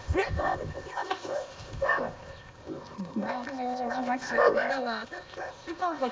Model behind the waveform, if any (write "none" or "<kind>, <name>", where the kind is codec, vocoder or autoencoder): codec, ZipCodec